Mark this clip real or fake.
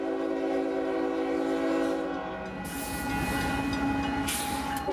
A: real